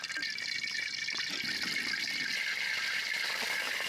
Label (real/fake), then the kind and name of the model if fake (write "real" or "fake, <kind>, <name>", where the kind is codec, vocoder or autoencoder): real